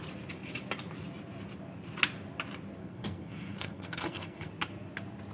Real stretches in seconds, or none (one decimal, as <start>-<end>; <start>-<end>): 0.0-2.8; 4.5-5.3